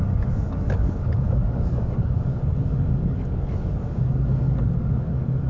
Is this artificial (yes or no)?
yes